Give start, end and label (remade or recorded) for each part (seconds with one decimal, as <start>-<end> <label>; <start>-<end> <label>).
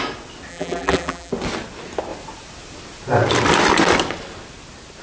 0.0-0.5 recorded; 0.5-1.3 remade; 1.3-5.0 recorded